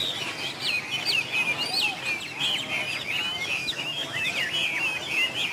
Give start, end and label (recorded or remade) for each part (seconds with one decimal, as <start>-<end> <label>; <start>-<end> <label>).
0.0-3.6 recorded; 3.6-4.3 remade; 4.3-5.5 recorded